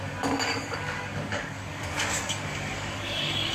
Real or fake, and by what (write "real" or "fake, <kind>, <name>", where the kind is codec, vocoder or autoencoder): fake, codec, DAC